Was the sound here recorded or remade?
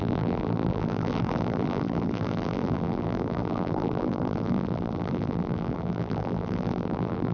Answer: remade